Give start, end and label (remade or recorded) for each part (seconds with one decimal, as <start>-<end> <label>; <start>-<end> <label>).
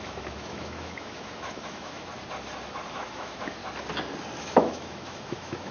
0.0-2.1 remade; 2.1-2.9 recorded; 2.9-3.6 remade; 3.6-4.4 recorded; 4.4-5.7 remade